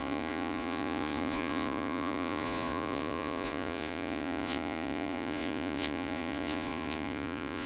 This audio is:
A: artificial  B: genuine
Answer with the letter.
A